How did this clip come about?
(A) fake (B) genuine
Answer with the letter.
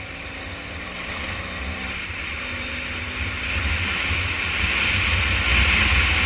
B